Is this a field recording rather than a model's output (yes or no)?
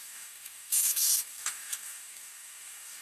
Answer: no